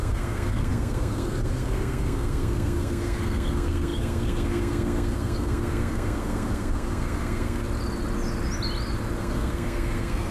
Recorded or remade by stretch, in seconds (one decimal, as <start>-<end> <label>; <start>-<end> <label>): 0.0-7.6 remade; 7.6-9.2 recorded; 9.2-10.3 remade